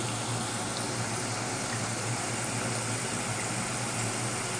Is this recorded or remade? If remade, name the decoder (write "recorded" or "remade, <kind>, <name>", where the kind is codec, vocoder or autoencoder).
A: recorded